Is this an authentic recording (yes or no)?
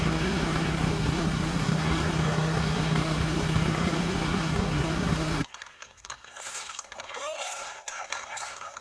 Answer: no